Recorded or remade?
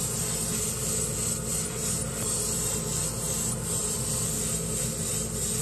recorded